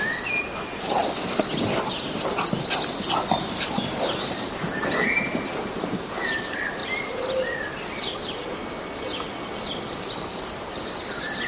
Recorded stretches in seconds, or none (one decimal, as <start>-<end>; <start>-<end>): 1.0-3.3; 6.8-10.4